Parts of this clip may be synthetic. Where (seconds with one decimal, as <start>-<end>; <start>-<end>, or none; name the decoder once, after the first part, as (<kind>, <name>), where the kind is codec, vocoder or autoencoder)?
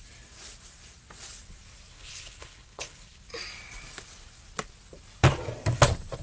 1.9-3.2 (codec, HILCodec)